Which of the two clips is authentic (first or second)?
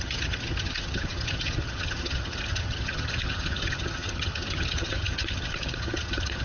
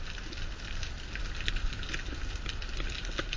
second